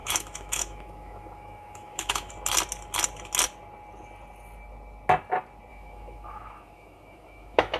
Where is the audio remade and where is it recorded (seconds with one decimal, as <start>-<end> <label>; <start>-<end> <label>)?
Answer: 0.0-2.3 remade; 2.3-5.7 recorded; 5.7-7.8 remade